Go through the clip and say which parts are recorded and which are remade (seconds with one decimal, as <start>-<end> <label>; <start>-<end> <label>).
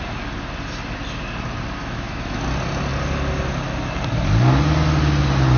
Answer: 0.0-1.8 recorded; 1.8-2.4 remade; 2.4-5.6 recorded